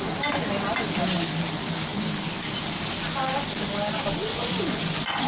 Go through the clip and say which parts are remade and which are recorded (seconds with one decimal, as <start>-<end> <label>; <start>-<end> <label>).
0.0-4.3 recorded; 4.3-5.3 remade